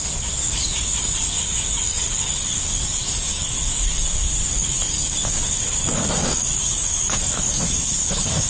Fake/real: fake